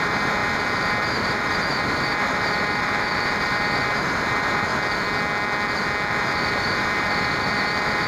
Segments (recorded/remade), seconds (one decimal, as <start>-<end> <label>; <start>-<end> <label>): 0.0-4.7 remade; 4.7-6.1 recorded; 6.1-8.1 remade